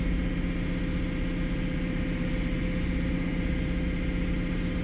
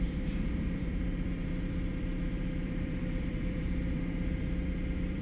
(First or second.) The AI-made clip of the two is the second